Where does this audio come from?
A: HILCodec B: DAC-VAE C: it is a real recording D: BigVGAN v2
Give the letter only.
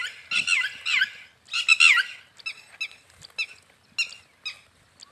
C